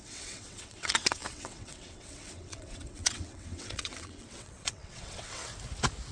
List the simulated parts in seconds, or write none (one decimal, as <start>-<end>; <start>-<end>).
0.0-5.4